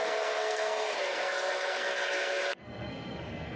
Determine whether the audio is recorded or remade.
remade